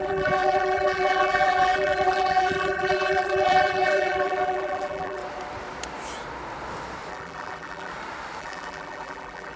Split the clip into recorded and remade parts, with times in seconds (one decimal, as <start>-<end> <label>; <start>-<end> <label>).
0.0-5.2 remade; 5.2-7.1 recorded; 7.1-7.9 remade; 7.9-8.4 recorded; 8.4-9.6 remade